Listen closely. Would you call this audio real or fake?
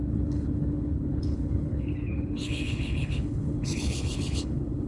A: fake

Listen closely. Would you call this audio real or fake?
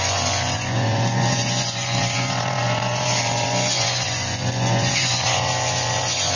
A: fake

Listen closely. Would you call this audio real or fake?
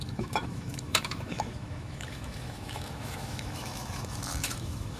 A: fake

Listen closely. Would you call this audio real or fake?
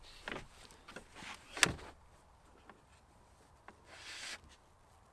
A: real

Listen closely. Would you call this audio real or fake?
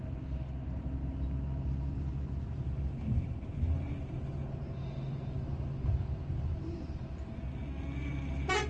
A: real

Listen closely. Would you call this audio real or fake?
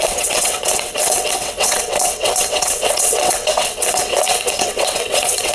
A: fake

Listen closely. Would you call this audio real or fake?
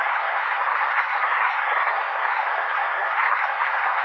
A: fake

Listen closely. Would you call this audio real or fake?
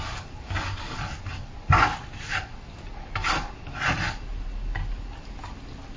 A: real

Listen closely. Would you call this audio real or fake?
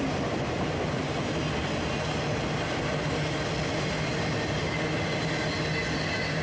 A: real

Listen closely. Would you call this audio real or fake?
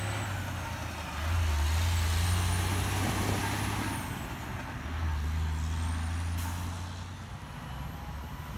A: real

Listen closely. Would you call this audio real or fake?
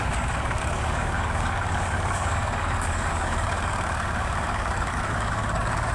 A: fake